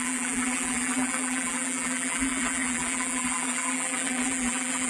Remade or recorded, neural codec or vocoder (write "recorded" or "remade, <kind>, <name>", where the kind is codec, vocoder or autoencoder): remade, vocoder, BigVGAN v2